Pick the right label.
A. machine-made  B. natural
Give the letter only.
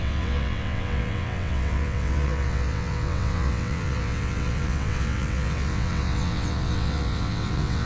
A